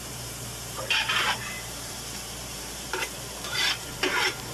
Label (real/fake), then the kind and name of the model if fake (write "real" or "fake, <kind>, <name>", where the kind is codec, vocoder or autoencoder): fake, vocoder, BigVGAN v2